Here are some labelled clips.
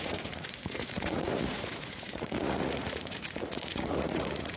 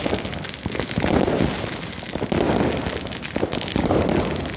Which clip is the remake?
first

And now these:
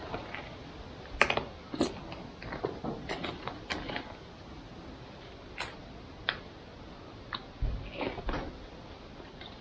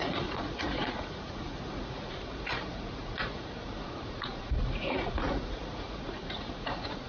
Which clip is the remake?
second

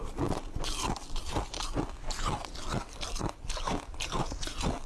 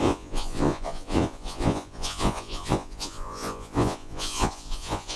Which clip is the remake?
second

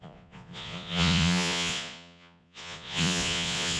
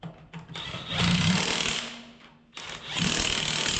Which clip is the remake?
first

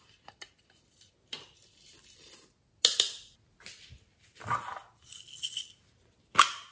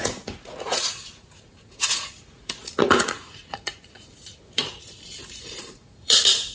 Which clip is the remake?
second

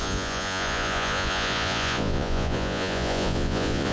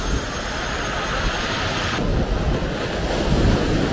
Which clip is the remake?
first